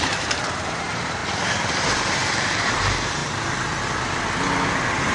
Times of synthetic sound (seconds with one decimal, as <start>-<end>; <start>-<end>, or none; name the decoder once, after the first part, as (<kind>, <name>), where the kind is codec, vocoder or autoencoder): 0.0-1.2 (vocoder, BigVGAN v2); 1.7-3.2